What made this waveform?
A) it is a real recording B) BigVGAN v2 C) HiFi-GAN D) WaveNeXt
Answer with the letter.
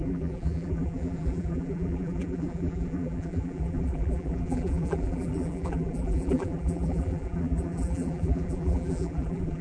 B